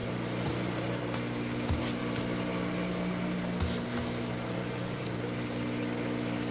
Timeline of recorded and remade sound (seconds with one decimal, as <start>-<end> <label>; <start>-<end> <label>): 0.0-4.6 recorded; 4.6-5.2 remade; 5.2-6.5 recorded